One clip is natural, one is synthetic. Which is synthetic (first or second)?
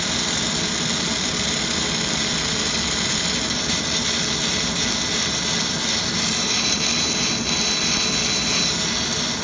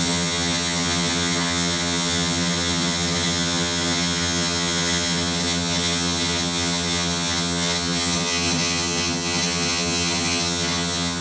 second